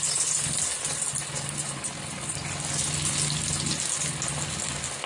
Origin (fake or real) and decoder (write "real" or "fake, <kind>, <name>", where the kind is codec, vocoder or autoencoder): real